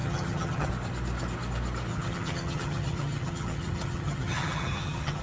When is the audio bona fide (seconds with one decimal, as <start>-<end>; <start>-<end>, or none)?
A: 0.7-1.9